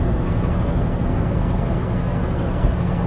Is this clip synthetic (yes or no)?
yes